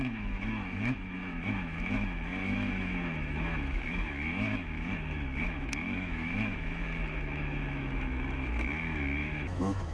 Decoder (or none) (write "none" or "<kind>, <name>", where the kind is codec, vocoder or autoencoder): autoencoder, DAC-VAE